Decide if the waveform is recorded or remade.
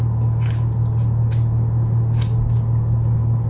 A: recorded